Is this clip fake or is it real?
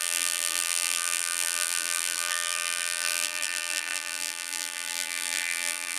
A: fake